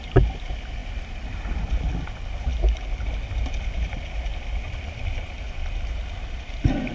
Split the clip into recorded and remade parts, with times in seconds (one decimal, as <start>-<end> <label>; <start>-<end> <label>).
0.0-6.9 recorded